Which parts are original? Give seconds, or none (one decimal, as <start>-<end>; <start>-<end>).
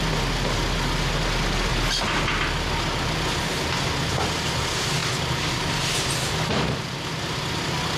0.0-8.0